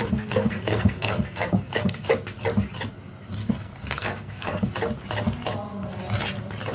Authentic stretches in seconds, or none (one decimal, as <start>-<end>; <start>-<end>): 2.1-3.4; 4.7-6.7